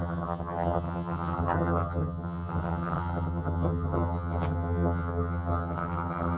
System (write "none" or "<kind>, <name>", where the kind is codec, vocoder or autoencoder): vocoder, HiFi-GAN